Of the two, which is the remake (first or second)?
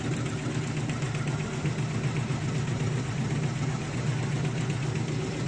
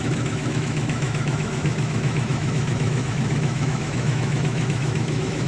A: second